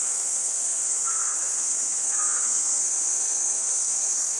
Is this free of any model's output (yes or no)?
no